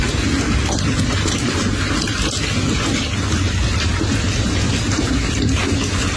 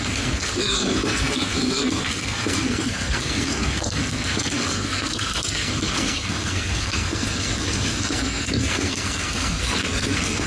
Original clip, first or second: first